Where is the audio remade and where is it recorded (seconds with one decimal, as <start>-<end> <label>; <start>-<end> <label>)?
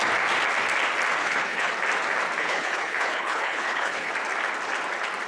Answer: 0.0-1.2 recorded; 1.2-1.7 remade; 1.7-2.4 recorded; 2.4-4.1 remade; 4.1-5.3 recorded